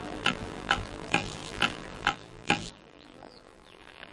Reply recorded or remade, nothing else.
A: remade